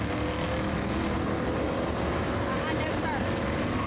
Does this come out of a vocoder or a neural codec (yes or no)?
no